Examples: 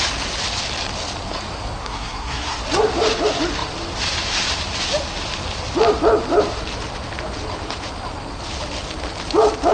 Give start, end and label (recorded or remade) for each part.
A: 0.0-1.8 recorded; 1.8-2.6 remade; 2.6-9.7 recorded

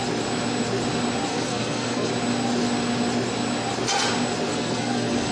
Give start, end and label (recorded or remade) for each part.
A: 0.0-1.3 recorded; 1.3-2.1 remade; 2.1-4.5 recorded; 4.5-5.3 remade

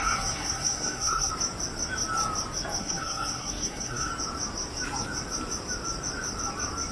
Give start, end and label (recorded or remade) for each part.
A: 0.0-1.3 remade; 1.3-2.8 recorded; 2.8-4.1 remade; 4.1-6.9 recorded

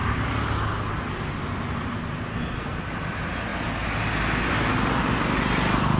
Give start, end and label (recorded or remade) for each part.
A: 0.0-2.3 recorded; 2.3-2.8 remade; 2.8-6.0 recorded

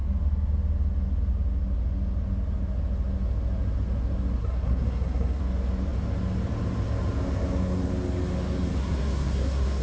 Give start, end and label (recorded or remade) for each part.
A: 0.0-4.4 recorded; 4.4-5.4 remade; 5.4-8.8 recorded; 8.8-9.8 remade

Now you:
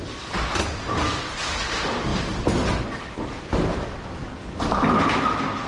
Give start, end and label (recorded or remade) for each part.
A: 0.0-5.7 recorded

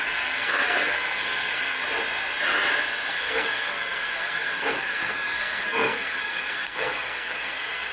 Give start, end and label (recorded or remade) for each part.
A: 0.0-1.8 remade; 1.8-3.1 recorded; 3.1-7.9 remade

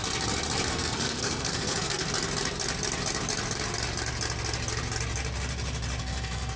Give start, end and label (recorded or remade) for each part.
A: 0.0-0.7 recorded; 0.7-2.0 remade; 2.0-6.0 recorded; 6.0-6.6 remade